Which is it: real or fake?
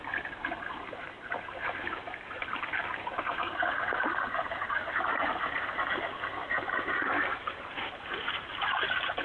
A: fake